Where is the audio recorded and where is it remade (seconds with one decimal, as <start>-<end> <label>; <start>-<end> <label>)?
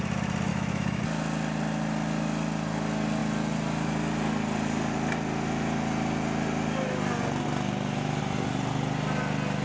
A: 0.0-0.5 recorded; 0.5-1.0 remade; 1.0-9.6 recorded